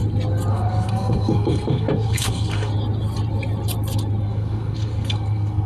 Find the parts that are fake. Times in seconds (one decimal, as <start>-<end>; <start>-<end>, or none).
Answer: 0.5-2.7; 4.2-5.7